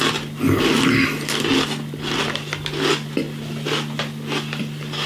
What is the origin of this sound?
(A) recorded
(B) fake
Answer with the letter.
A